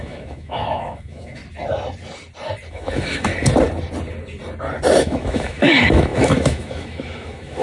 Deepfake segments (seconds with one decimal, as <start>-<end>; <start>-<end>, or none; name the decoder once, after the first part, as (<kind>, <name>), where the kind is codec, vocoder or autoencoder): 0.0-1.4 (autoencoder, DAC-VAE); 2.7-3.3; 5.0-7.6